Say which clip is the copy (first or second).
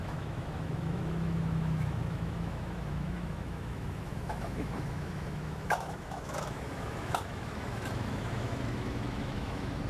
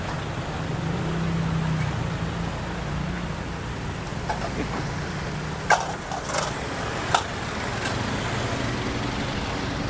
first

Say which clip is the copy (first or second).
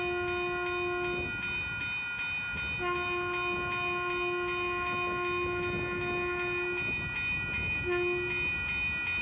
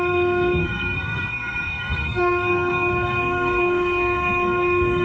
second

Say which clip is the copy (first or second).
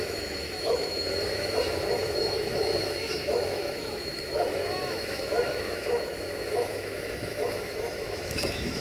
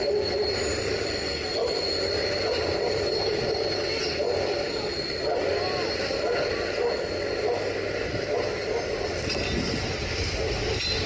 first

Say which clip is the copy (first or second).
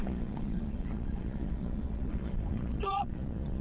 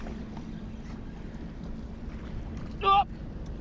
first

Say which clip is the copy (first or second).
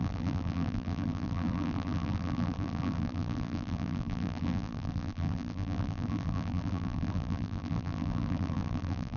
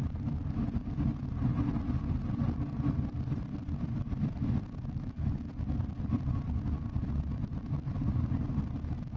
first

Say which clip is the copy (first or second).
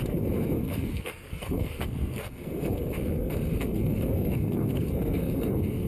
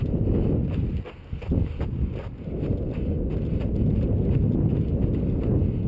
first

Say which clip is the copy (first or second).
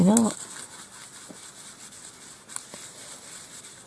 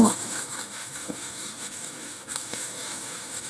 second